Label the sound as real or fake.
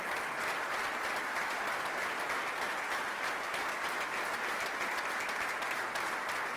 real